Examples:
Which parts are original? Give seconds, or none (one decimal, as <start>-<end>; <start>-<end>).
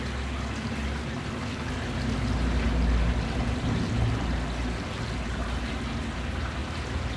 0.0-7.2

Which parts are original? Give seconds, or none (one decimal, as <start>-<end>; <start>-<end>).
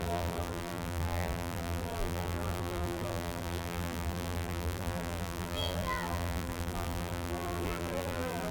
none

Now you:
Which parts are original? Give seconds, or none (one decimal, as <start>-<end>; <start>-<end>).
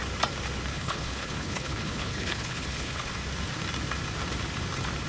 0.0-0.7; 3.1-5.1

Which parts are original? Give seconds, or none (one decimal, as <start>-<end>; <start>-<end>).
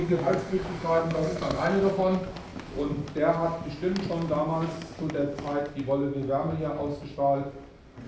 1.6-8.1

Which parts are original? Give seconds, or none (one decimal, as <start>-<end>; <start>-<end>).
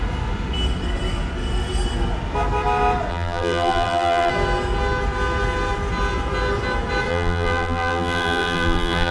0.0-3.1; 4.3-7.1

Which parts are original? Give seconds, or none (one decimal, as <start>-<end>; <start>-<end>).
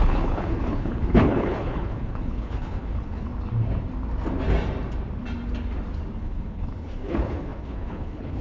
3.3-6.2